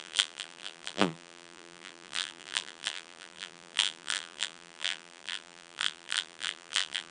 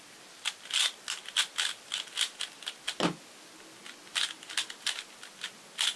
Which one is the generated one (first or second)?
first